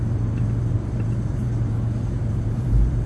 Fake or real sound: fake